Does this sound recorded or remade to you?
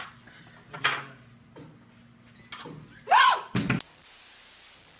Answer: recorded